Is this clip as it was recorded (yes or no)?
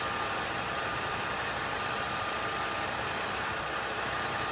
yes